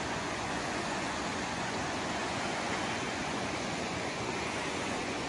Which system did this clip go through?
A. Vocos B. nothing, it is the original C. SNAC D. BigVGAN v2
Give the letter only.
A